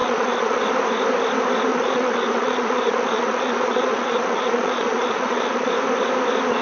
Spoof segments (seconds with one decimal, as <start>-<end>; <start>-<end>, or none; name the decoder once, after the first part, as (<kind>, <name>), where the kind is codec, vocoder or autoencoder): 0.0-0.6 (vocoder, Vocos); 1.7-5.7